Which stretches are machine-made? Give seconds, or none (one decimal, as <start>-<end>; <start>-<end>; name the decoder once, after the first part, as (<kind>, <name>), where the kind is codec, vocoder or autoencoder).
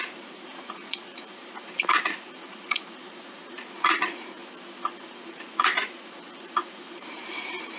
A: 0.0-4.4 (vocoder, Vocos); 5.0-7.8